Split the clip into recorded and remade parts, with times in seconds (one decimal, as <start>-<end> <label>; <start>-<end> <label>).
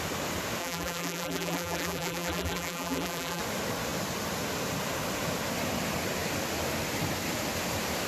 0.0-0.6 recorded; 0.6-3.4 remade; 3.4-8.1 recorded